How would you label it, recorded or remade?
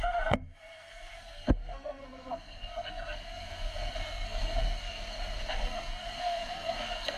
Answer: remade